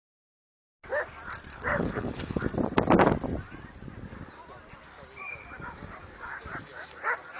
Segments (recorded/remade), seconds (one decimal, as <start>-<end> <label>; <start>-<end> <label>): 0.0-1.5 recorded; 1.5-2.4 remade; 2.4-7.4 recorded